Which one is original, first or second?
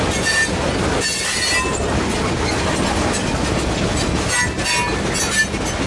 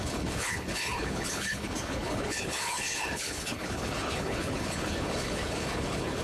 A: first